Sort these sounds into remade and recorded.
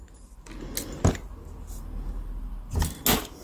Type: recorded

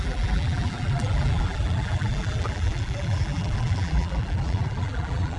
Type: remade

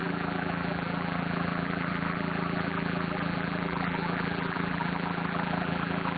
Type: remade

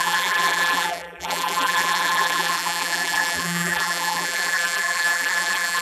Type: remade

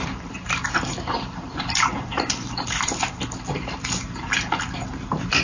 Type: remade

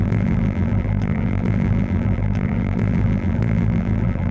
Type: remade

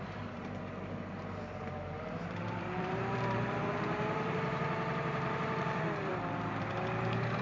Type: remade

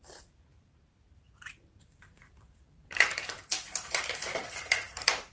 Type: remade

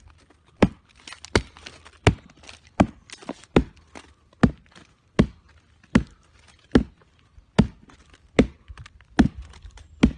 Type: recorded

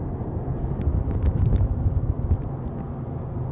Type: recorded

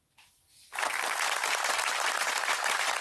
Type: recorded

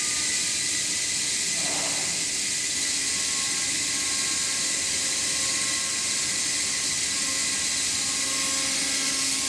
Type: recorded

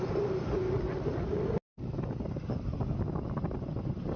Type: recorded